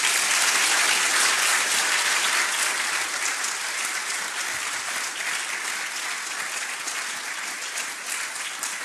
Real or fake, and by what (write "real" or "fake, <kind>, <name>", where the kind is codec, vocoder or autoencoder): real